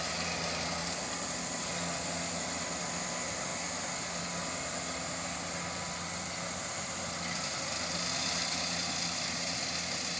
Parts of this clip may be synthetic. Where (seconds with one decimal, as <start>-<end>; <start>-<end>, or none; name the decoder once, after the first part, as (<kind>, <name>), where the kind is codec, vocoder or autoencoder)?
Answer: none